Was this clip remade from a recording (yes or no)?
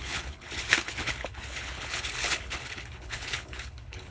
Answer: yes